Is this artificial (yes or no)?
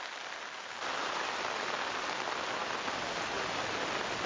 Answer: no